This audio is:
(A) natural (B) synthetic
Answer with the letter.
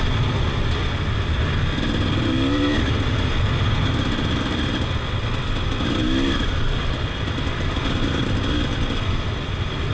A